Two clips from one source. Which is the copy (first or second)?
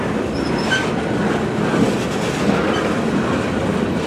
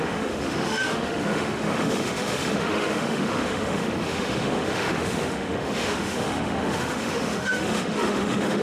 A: second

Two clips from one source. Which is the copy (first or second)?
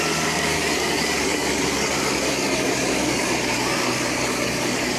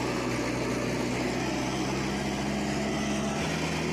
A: first